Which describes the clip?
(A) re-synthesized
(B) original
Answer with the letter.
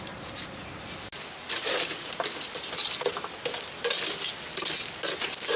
B